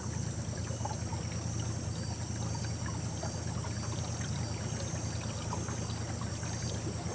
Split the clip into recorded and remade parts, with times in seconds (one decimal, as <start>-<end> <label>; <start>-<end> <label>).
0.0-7.1 recorded